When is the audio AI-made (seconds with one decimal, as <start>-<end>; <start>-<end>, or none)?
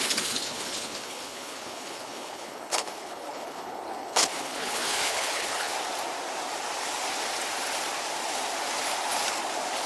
0.0-5.7